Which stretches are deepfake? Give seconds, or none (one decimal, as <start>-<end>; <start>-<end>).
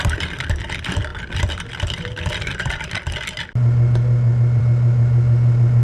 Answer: none